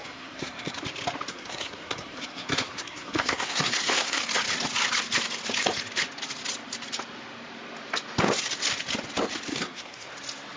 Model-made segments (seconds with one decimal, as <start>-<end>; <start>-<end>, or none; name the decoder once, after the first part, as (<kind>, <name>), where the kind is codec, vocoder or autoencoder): 0.0-0.8 (codec, SNAC); 1.3-4.2; 9.5-10.1